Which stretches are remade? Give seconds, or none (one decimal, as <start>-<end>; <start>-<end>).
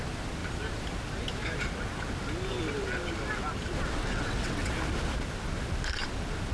4.0-4.7